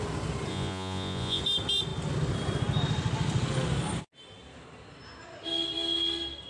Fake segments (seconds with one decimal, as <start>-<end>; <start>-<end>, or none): 0.5-1.4